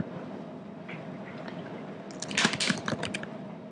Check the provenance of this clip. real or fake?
real